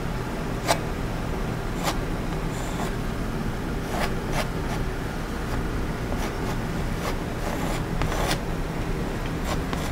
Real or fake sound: real